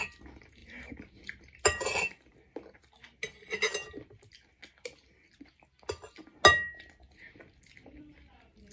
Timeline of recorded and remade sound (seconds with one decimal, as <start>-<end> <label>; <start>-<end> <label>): 0.0-8.7 recorded